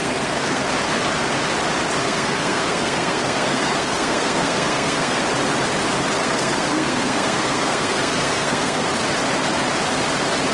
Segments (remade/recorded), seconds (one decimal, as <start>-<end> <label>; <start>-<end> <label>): 0.0-0.6 remade; 0.6-2.0 recorded; 2.0-5.2 remade; 5.2-6.2 recorded; 6.2-8.9 remade; 8.9-10.5 recorded